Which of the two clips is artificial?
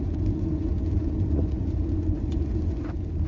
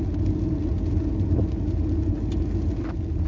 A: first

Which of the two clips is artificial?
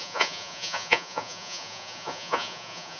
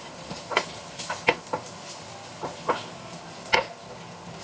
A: first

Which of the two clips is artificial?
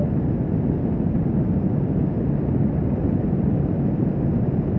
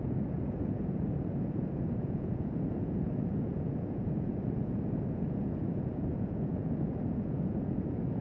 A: second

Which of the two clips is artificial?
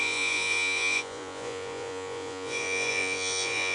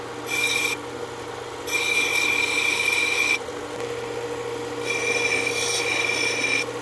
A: first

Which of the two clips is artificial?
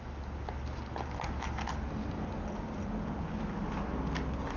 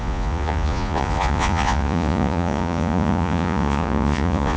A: second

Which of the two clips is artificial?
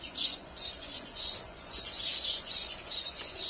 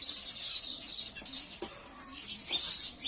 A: first